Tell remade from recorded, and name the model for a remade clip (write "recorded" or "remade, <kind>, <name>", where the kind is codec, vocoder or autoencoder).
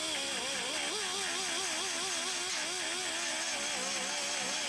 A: recorded